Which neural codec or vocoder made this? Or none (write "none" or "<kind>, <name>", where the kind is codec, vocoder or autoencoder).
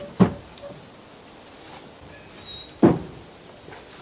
none